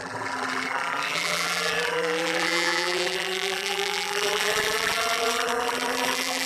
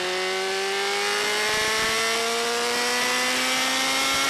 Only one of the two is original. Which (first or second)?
second